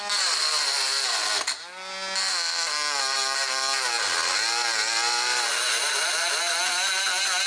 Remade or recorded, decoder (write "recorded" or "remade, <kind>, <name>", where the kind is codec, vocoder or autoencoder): recorded